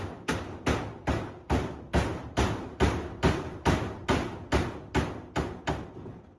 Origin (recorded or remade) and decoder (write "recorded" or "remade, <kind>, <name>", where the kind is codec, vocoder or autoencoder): recorded